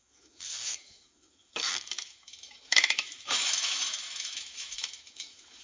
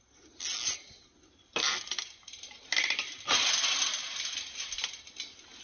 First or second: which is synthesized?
first